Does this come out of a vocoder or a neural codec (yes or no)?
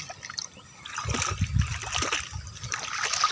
no